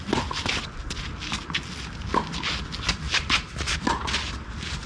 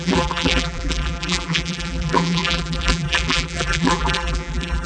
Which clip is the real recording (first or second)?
first